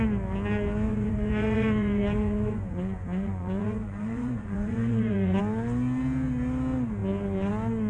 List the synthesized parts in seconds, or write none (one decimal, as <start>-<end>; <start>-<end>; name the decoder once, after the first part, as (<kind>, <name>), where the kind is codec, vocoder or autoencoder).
0.9-5.4 (vocoder, Vocos)